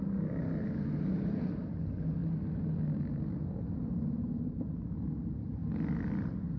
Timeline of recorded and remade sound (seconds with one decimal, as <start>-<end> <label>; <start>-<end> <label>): 0.0-6.6 recorded